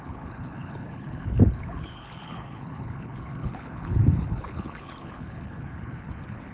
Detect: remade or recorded remade